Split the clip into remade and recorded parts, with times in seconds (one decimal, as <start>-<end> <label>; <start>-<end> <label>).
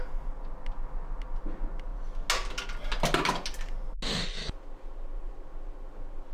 0.0-6.3 recorded